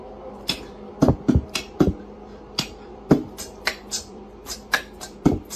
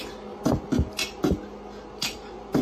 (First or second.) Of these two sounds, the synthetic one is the first